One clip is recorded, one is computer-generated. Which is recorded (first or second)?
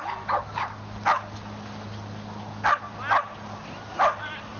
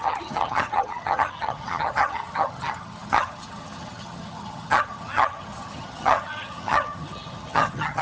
first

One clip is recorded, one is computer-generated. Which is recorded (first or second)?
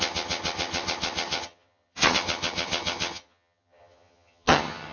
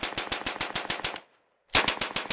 second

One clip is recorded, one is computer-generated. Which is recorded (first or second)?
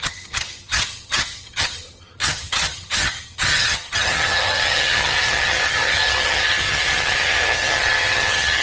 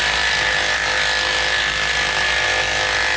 second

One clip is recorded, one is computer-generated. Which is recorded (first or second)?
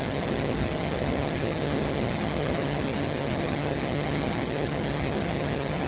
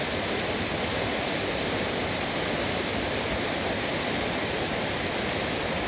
second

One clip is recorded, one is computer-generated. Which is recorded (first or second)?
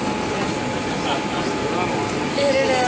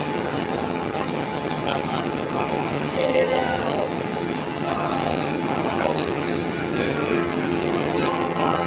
first